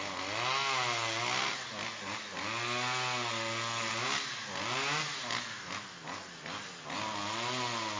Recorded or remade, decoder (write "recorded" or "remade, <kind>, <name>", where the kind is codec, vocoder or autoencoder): recorded